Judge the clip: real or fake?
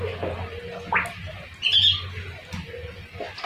real